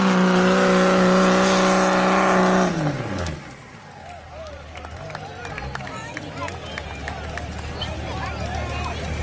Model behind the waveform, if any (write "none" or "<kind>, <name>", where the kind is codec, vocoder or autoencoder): none